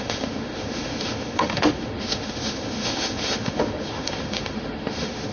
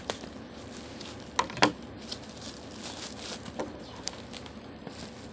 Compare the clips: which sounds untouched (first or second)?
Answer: second